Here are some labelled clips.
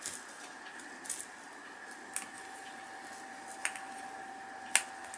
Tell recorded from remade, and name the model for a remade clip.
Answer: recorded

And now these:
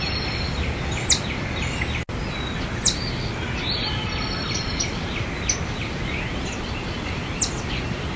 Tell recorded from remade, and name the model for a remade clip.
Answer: recorded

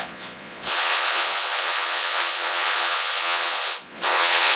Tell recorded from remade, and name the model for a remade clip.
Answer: remade, vocoder, Vocos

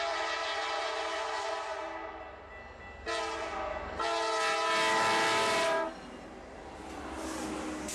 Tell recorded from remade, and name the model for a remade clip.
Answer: recorded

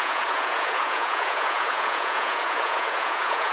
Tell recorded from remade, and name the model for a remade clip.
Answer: remade, vocoder, Vocos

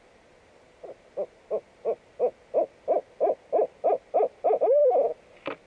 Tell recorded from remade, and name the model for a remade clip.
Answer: recorded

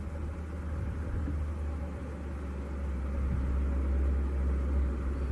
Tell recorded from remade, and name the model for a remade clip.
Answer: recorded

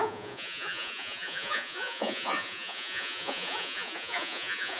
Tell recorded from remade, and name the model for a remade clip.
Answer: remade, vocoder, Vocos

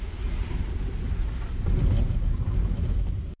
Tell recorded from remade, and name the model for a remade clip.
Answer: recorded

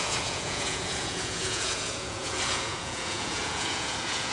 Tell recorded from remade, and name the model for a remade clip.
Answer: remade, vocoder, Vocos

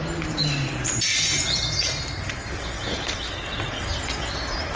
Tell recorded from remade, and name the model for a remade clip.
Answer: recorded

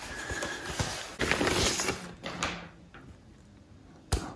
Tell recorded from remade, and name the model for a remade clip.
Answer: recorded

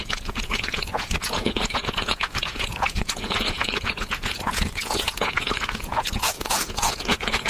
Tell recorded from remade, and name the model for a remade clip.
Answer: remade, vocoder, Vocos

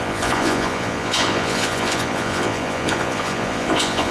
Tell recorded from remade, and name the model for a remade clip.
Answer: remade, vocoder, Vocos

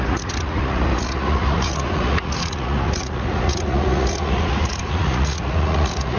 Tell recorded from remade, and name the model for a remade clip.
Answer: remade, vocoder, Vocos